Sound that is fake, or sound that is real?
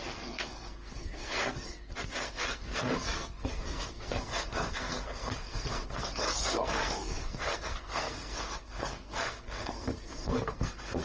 fake